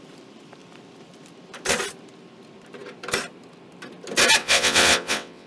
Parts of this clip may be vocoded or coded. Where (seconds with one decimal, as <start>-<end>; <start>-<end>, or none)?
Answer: 4.4-5.5